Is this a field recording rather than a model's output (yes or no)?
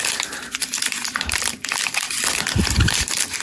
no